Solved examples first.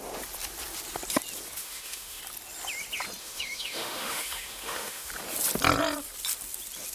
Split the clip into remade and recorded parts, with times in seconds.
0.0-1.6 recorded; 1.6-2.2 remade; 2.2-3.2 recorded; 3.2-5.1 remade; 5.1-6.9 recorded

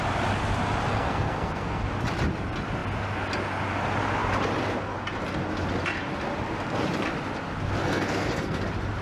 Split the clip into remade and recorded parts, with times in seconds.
0.0-0.9 recorded; 0.9-1.9 remade; 1.9-7.8 recorded; 7.8-8.6 remade; 8.6-9.0 recorded

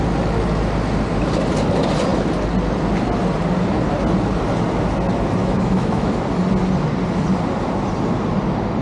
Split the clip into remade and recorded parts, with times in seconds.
0.0-5.4 recorded; 5.4-6.1 remade; 6.1-8.8 recorded